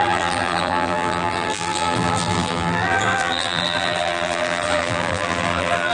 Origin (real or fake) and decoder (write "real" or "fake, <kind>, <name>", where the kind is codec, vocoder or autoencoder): fake, vocoder, BigVGAN v2